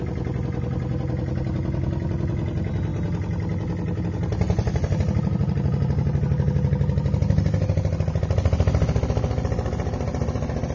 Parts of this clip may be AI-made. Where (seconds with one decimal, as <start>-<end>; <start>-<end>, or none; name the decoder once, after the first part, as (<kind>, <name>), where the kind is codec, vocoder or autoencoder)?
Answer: none